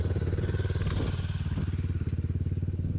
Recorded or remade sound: recorded